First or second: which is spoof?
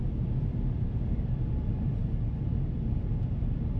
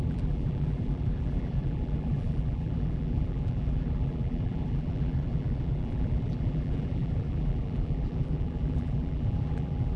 second